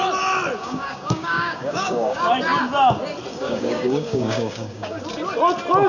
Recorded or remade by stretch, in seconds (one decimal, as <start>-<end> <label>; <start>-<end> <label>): 0.0-0.6 recorded; 0.6-2.3 remade; 2.3-3.3 recorded; 3.3-5.0 remade; 5.0-5.9 recorded